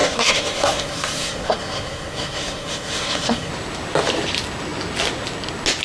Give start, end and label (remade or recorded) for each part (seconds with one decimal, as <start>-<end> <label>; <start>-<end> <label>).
0.0-3.5 remade; 3.5-5.8 recorded